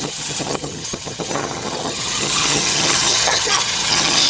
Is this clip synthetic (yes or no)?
yes